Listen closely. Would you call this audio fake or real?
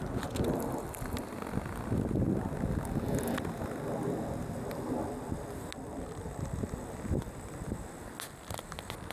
real